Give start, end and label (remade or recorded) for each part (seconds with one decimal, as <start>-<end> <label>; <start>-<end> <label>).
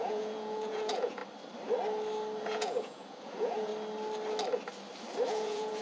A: 0.0-1.2 remade; 1.2-2.4 recorded; 2.4-3.7 remade; 3.7-5.3 recorded; 5.3-5.8 remade